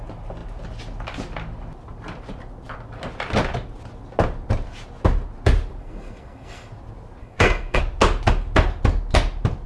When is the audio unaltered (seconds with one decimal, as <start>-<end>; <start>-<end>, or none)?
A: 0.0-5.8; 6.7-7.2; 7.8-9.7